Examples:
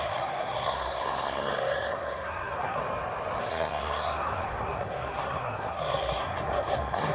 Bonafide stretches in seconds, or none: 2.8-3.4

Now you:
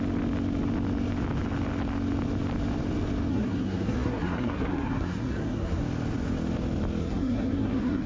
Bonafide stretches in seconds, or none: 0.0-3.3; 5.8-7.0

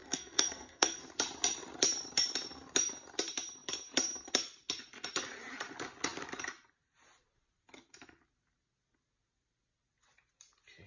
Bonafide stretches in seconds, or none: 1.0-10.9

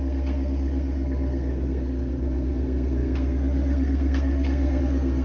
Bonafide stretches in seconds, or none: none

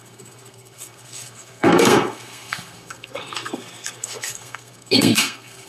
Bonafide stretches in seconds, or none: none

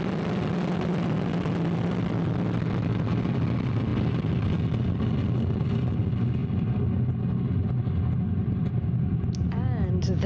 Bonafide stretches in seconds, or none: 0.0-10.3

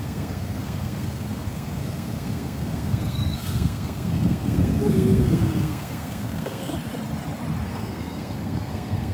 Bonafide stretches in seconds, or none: 6.7-7.7